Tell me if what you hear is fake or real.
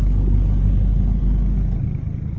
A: real